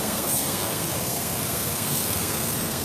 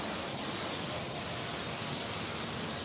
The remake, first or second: first